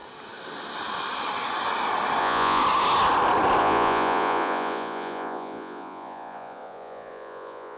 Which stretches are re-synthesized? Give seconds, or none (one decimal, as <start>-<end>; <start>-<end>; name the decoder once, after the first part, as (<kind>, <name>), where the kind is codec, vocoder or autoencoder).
2.2-2.6 (vocoder, Vocos); 3.6-7.8